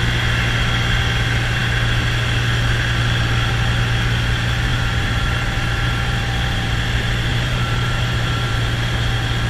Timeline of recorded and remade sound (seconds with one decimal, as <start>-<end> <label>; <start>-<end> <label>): 0.0-4.7 recorded; 4.7-6.7 remade; 6.7-7.3 recorded; 7.3-8.5 remade; 8.5-9.5 recorded